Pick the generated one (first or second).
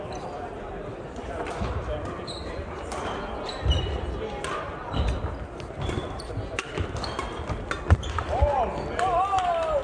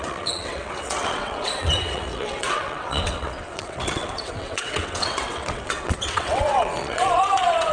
second